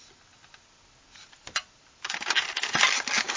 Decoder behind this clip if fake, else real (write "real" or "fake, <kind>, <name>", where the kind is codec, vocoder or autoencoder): real